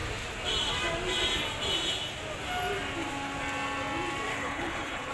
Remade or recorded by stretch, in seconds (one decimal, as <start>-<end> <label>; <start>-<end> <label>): 0.0-4.3 recorded; 4.3-5.1 remade